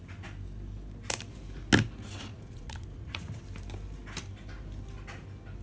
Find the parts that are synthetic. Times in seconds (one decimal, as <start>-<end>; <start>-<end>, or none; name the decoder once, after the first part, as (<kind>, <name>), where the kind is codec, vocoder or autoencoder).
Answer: 2.3-3.4 (vocoder, Vocos)